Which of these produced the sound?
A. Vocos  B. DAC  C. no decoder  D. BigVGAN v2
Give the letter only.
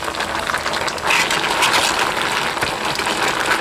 C